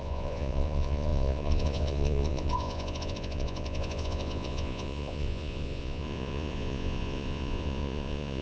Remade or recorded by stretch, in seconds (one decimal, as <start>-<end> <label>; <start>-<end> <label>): 0.0-8.4 remade